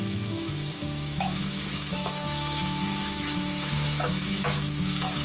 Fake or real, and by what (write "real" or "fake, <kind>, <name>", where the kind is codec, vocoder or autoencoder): fake, autoencoder, DAC-VAE